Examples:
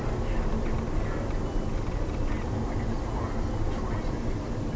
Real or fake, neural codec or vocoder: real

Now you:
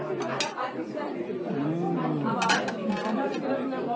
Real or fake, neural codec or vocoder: real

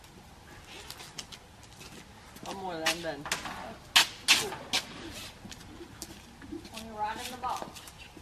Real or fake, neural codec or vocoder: real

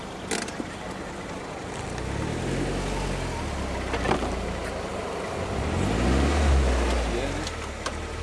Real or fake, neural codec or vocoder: real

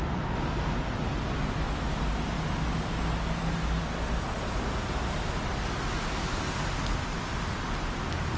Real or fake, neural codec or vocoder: real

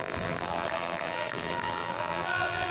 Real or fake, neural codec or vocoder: fake, vocoder, BigVGAN v2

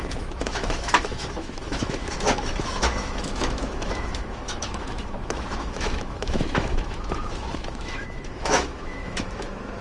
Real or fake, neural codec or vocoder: fake, autoencoder, DAC-VAE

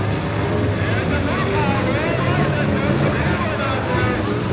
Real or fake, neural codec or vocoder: real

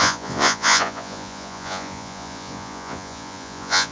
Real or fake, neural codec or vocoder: fake, vocoder, Vocos